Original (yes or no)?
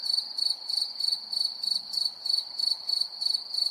yes